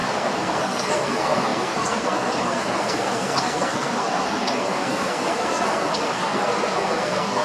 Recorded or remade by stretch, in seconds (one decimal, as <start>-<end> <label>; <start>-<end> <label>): 0.0-7.4 remade

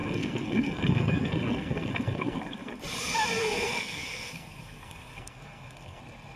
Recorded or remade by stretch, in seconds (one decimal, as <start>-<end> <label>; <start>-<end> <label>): 0.0-2.8 remade; 2.8-3.4 recorded; 3.4-6.0 remade; 6.0-6.4 recorded